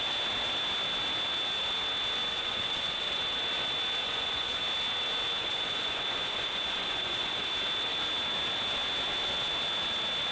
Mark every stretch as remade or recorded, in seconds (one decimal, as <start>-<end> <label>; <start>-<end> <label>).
0.0-2.3 recorded; 2.3-3.2 remade; 3.2-4.0 recorded; 4.0-4.6 remade; 4.6-5.4 recorded; 5.4-7.5 remade; 7.5-10.3 recorded